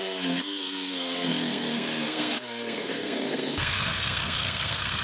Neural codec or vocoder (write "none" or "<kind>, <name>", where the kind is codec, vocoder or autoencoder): codec, SNAC